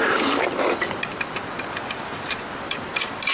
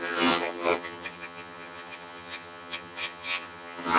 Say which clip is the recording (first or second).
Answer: first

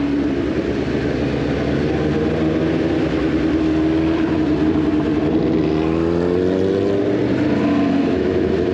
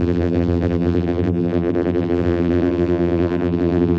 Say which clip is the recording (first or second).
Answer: first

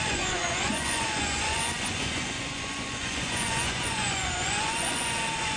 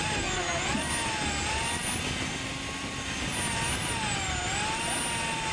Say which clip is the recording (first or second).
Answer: second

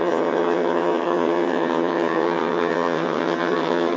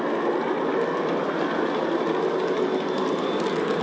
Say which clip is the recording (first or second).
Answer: second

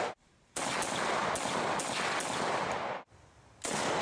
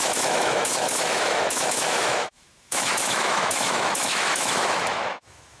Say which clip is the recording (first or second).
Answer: first